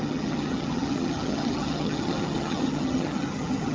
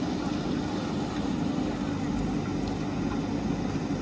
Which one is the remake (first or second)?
first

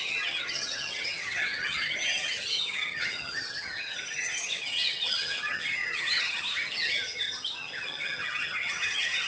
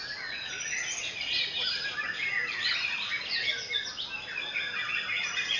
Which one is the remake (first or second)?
first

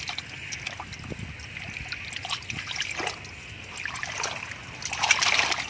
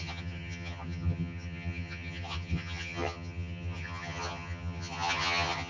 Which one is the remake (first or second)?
second